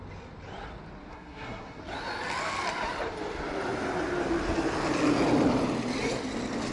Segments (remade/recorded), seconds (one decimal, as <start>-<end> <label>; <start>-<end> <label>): 0.0-1.1 recorded; 1.1-1.8 remade; 1.8-6.7 recorded